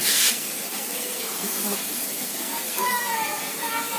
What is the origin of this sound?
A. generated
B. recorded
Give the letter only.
A